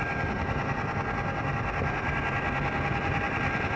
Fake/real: real